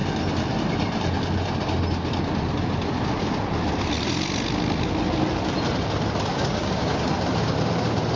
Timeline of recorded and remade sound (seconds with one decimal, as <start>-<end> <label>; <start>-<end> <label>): 0.0-6.3 recorded; 6.3-7.1 remade; 7.1-8.2 recorded